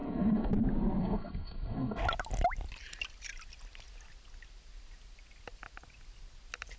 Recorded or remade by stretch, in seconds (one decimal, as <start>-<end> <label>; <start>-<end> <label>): 0.0-0.5 remade; 0.5-1.0 recorded; 1.0-2.0 remade; 2.0-6.8 recorded